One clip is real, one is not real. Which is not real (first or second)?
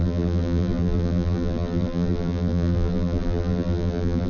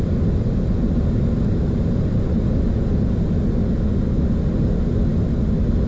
first